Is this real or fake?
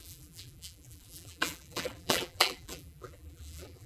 fake